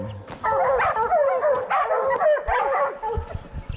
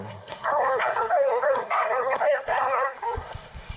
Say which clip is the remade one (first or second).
second